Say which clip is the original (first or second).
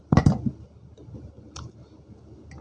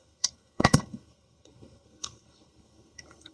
first